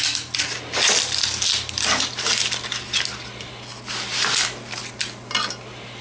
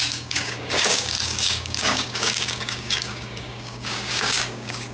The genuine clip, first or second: first